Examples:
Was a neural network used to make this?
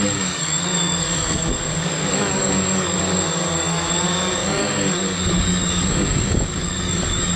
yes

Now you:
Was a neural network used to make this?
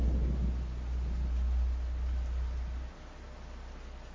no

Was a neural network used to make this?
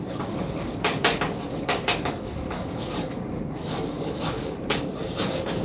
yes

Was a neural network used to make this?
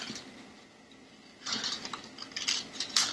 no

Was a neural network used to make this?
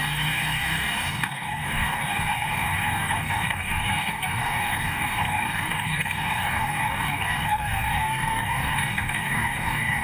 yes